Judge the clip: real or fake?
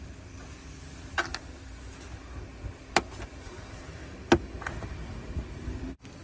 real